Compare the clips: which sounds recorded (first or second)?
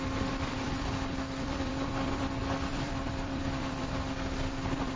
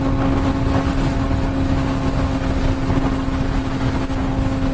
second